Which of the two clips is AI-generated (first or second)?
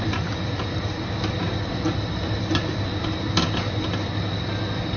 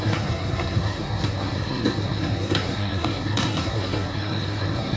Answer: second